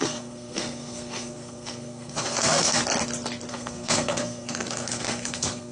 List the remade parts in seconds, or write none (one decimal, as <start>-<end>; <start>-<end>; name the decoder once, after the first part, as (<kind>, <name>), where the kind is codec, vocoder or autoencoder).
0.0-2.8 (codec, SNAC); 3.5-5.7